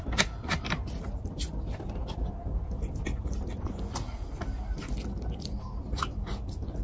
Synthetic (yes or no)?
no